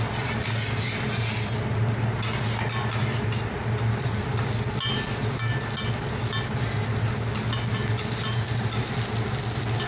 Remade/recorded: recorded